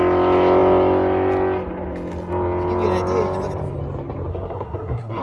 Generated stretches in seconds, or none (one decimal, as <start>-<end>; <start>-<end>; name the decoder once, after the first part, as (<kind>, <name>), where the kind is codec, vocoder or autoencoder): 4.3-5.2 (codec, SNAC)